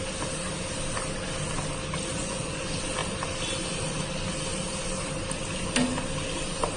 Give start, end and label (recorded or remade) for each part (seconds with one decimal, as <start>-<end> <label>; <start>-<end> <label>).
0.0-2.1 recorded; 2.1-2.6 remade; 2.6-6.8 recorded